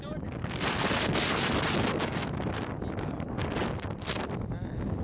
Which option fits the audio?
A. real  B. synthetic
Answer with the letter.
A